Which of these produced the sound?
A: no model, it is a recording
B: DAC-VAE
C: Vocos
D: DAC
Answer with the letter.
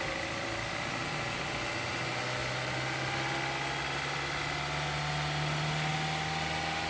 A